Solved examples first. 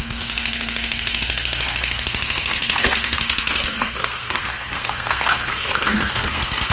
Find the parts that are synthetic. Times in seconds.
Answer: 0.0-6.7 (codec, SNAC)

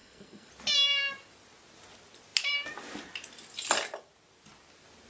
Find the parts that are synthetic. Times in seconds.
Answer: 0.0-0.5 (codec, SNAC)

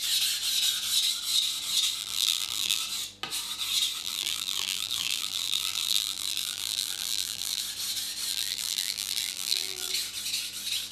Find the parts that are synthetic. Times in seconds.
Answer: 2.0-2.8 (vocoder, BigVGAN v2); 4.0-7.6; 8.3-9.9

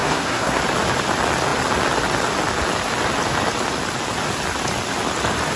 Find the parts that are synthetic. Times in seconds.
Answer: 0.0-0.6 (codec, SNAC)

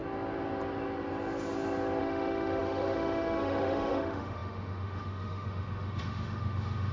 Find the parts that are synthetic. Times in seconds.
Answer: 2.0-6.9 (autoencoder, DAC-VAE)

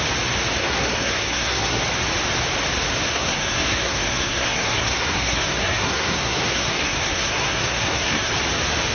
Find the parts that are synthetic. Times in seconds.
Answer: 0.6-1.8 (codec, SNAC); 3.1-8.3